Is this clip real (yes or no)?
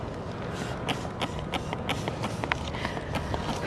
yes